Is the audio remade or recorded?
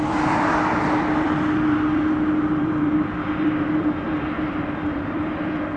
remade